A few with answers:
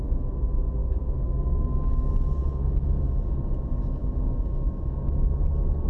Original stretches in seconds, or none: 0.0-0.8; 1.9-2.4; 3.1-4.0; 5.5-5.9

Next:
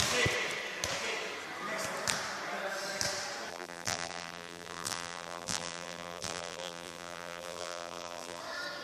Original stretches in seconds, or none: 0.0-3.5; 8.4-8.8

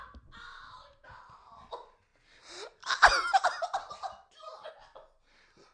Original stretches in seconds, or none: 0.0-5.7

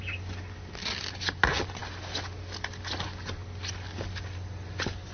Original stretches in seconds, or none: 0.0-5.1

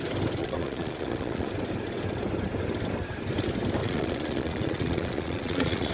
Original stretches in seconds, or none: 0.0-0.4; 1.5-3.8

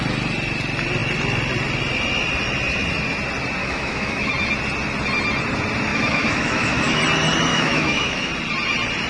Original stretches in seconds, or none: 0.0-3.6; 4.3-5.9; 7.0-7.5; 8.3-9.1

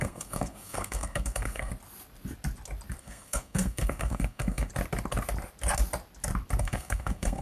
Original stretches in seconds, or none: 1.7-3.0; 4.7-6.6